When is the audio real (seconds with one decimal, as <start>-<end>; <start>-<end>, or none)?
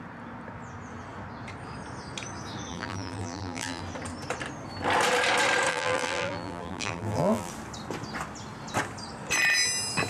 0.0-2.7; 3.8-5.7; 7.5-10.1